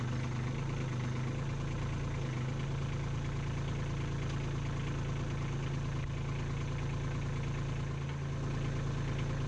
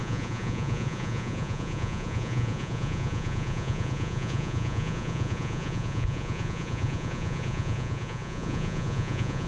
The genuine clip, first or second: first